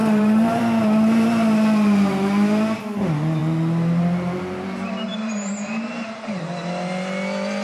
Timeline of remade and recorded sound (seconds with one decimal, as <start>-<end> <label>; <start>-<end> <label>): 0.0-0.6 remade; 0.6-5.1 recorded; 5.1-6.4 remade; 6.4-7.6 recorded